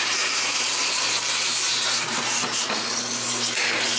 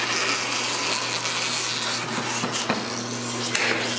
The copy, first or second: first